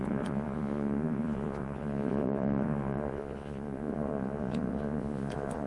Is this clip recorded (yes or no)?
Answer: no